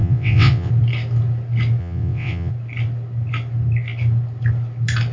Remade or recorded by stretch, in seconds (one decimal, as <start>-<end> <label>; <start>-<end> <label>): 0.0-0.7 remade; 0.7-1.8 recorded; 1.8-2.5 remade; 2.5-5.1 recorded